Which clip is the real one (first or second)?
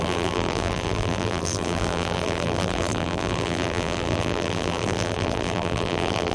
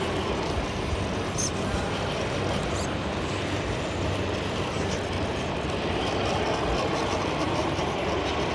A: second